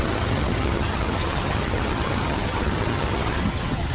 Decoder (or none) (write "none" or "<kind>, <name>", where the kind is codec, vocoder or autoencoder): vocoder, HiFi-GAN